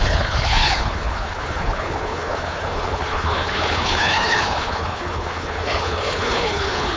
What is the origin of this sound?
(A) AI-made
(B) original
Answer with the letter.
A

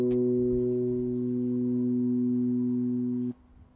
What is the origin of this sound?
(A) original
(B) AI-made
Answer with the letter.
A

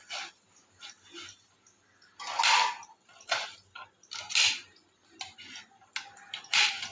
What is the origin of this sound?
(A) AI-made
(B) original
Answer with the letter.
B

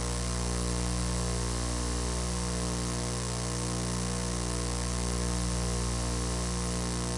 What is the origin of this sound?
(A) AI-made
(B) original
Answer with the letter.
B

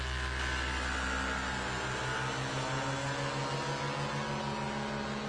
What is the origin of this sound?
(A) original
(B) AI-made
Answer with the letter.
A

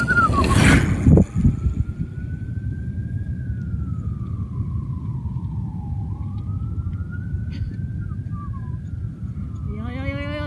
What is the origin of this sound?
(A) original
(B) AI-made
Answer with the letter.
A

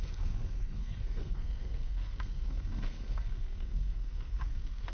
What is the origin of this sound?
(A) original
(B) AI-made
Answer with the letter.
B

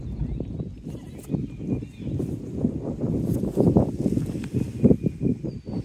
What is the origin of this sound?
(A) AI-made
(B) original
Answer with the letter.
B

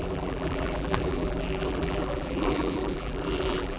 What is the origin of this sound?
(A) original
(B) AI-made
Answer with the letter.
B